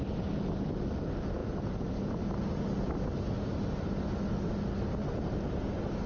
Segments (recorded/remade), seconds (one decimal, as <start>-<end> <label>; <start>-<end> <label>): 0.0-6.1 recorded